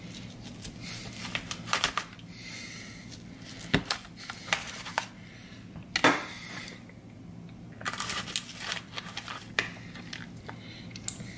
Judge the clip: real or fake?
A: real